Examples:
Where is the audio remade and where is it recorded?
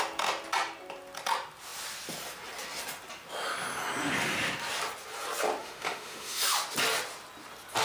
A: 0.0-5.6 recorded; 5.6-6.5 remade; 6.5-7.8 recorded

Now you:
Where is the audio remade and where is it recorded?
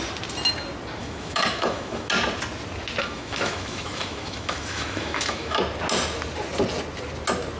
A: 0.0-1.0 recorded; 1.0-2.1 remade; 2.1-3.0 recorded; 3.0-5.6 remade; 5.6-7.6 recorded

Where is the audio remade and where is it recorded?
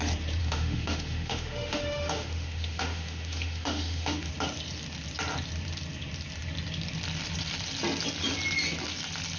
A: 0.0-0.4 recorded; 0.4-4.3 remade; 4.3-9.4 recorded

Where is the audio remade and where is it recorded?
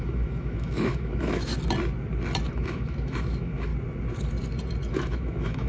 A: 0.0-1.5 remade; 1.5-2.5 recorded; 2.5-3.7 remade; 3.7-4.9 recorded; 4.9-5.7 remade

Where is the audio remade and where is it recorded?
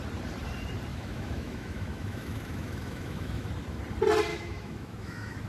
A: 0.0-0.9 recorded; 0.9-3.5 remade; 3.5-4.3 recorded; 4.3-5.5 remade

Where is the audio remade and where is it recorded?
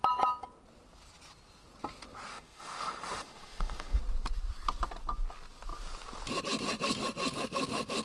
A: 0.0-2.3 recorded; 2.3-4.0 remade; 4.0-8.0 recorded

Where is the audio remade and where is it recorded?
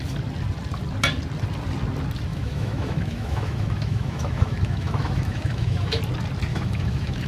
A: 0.0-2.3 recorded; 2.3-6.0 remade; 6.0-6.5 recorded; 6.5-7.3 remade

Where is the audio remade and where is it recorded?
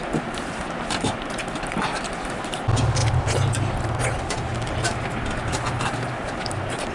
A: 0.0-6.9 recorded